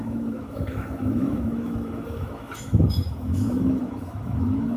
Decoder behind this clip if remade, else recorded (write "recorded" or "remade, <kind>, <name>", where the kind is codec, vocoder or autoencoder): remade, autoencoder, DAC-VAE